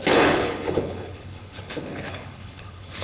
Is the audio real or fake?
fake